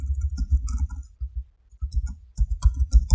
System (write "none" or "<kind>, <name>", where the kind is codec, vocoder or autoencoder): none